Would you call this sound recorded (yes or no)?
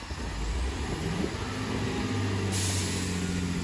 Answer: yes